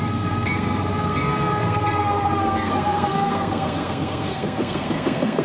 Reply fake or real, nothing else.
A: fake